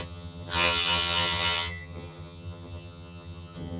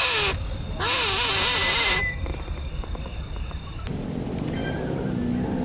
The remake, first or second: first